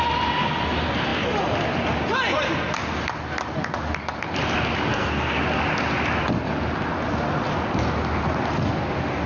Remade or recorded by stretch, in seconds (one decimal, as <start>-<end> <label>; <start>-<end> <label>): 0.0-4.9 recorded; 4.9-5.4 remade; 5.4-9.3 recorded